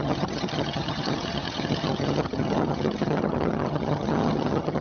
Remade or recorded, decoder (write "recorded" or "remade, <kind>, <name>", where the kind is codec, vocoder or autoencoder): remade, vocoder, HiFi-GAN